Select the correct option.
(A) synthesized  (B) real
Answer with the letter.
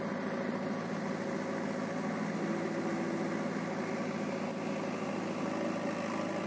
B